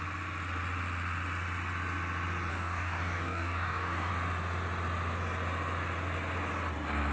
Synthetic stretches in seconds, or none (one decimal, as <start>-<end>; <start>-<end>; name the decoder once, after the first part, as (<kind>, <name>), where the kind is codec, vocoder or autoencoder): 2.5-4.1 (codec, DAC)